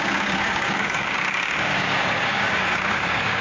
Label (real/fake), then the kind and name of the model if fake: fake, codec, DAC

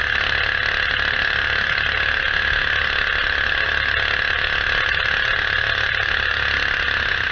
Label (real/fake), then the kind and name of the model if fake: real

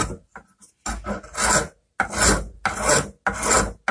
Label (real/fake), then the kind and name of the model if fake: real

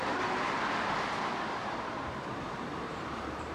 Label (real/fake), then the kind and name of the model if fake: fake, vocoder, BigVGAN v2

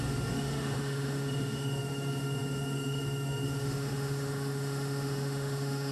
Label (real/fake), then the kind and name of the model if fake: fake, autoencoder, DAC-VAE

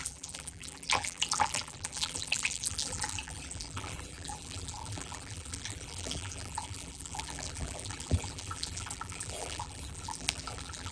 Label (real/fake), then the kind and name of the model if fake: fake, vocoder, BigVGAN v2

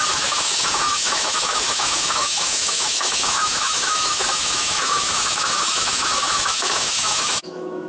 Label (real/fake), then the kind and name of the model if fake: fake, autoencoder, DAC-VAE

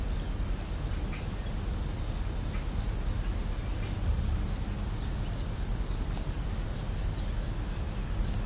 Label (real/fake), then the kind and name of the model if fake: real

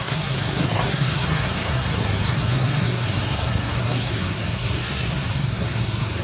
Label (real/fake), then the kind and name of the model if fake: fake, codec, SNAC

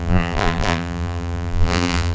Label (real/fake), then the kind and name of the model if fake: fake, vocoder, BigVGAN v2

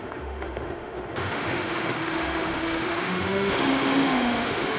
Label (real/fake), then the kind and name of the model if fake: fake, autoencoder, DAC-VAE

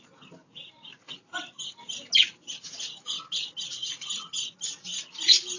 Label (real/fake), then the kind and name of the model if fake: real